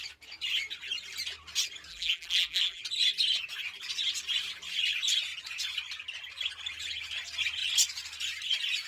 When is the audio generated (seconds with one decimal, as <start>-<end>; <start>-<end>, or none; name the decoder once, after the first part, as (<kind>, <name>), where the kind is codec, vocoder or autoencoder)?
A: 1.9-2.8 (vocoder, BigVGAN v2)